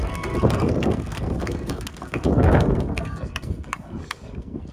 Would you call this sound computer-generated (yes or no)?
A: yes